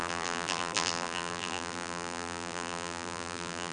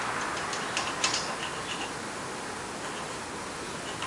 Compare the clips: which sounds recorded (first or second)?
second